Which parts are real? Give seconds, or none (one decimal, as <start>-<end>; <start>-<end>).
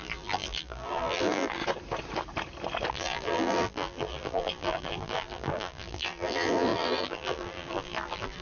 1.6-2.9